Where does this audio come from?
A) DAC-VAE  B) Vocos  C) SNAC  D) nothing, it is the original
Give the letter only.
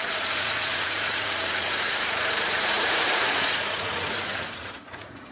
B